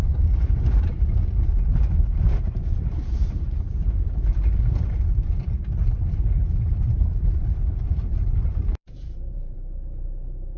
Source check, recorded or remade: remade